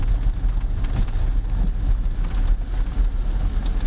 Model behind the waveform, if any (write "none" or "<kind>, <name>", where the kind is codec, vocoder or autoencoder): none